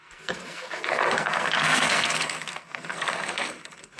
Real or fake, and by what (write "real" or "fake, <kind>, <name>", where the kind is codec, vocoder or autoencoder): fake, codec, SNAC